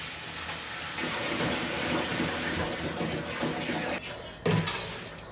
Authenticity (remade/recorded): recorded